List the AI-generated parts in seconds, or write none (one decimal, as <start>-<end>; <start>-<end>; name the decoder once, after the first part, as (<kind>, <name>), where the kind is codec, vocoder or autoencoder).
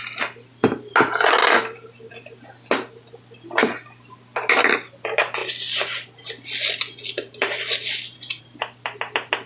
none